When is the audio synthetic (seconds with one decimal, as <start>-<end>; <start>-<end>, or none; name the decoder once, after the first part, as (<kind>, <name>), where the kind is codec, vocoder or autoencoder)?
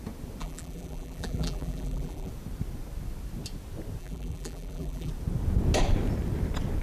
0.4-2.3 (vocoder, BigVGAN v2); 4.0-5.1